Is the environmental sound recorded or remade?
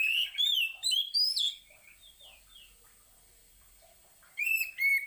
remade